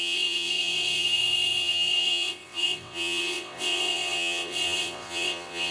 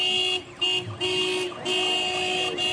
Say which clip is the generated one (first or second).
first